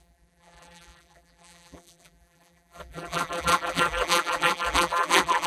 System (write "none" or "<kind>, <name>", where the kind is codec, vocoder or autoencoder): vocoder, BigVGAN v2